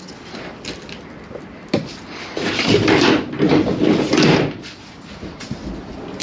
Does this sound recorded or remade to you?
recorded